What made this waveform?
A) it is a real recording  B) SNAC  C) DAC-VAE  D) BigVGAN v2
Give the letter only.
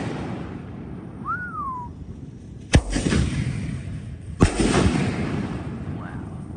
D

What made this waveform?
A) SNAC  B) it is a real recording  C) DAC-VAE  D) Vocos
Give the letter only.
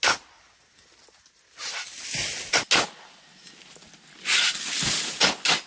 B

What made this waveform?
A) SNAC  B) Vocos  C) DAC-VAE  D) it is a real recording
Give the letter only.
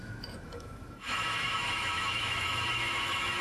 C